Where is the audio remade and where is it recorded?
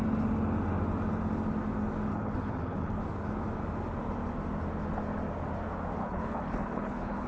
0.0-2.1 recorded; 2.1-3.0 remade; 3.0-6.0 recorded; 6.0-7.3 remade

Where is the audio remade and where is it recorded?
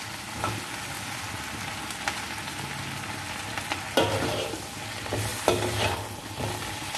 0.0-7.0 recorded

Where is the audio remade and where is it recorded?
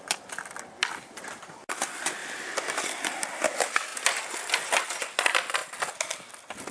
0.0-6.7 recorded